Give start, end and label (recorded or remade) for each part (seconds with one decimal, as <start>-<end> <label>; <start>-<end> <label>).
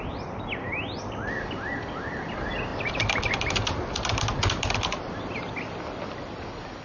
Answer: 0.0-6.8 recorded